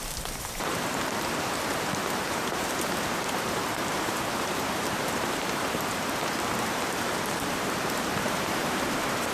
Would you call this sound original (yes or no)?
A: no